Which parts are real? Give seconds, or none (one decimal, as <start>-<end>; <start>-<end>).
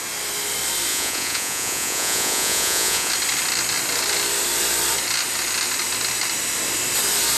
0.0-0.9; 3.1-7.4